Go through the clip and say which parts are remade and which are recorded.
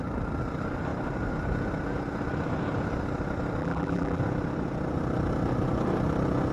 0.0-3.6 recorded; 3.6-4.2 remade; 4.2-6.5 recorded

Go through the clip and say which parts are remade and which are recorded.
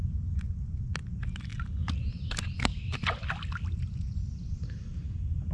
0.0-5.5 recorded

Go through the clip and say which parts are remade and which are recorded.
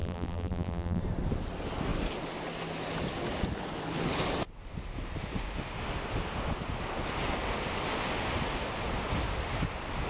0.0-1.0 remade; 1.0-10.1 recorded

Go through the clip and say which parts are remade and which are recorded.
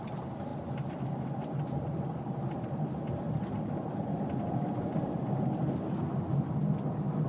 0.0-0.5 recorded; 0.5-4.9 remade; 4.9-7.3 recorded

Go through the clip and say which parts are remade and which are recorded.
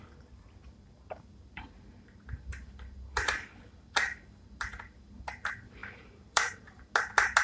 0.0-5.8 recorded; 5.8-6.8 remade; 6.8-7.4 recorded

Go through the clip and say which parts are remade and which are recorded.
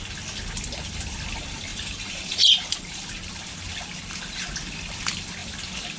0.0-1.7 recorded; 1.7-3.3 remade; 3.3-6.0 recorded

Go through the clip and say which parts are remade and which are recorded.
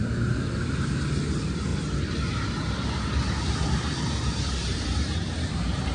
0.0-1.7 remade; 1.7-3.3 recorded; 3.3-5.9 remade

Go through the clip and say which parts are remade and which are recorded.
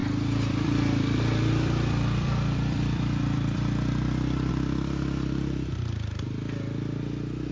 0.0-4.5 remade; 4.5-7.5 recorded